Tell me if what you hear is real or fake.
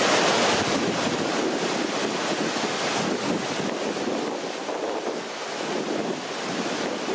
real